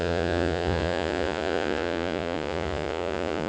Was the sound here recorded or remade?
remade